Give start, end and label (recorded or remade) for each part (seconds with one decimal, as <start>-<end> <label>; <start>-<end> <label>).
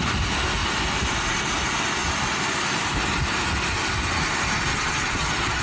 0.0-4.7 recorded; 4.7-5.6 remade